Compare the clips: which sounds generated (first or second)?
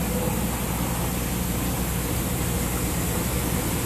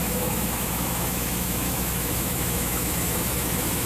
second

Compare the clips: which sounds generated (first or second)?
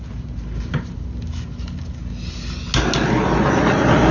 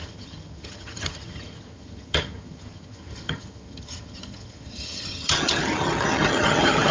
second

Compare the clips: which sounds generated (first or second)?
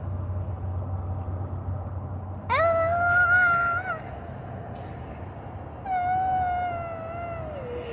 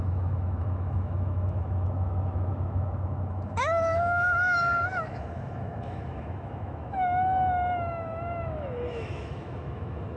second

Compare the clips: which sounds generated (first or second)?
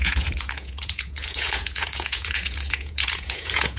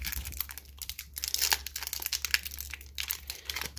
first